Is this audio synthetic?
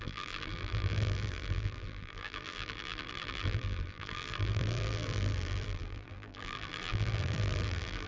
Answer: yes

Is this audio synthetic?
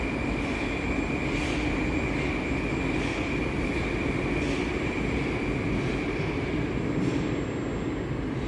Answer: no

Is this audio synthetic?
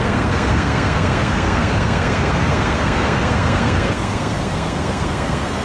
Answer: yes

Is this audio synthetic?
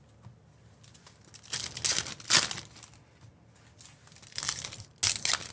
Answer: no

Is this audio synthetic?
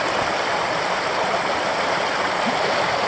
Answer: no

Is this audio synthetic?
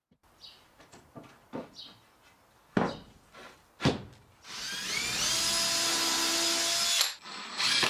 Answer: no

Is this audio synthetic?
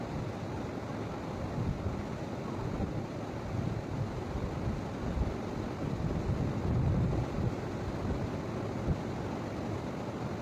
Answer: no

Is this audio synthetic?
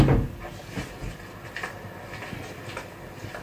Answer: no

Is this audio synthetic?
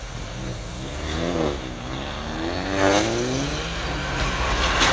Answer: no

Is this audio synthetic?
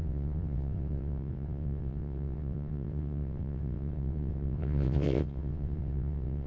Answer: yes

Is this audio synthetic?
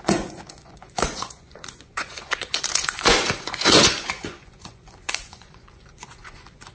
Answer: yes